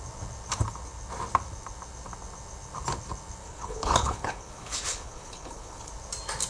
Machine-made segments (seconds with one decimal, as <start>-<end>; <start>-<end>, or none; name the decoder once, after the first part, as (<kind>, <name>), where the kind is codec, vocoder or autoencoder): 3.4-5.9 (codec, HILCodec)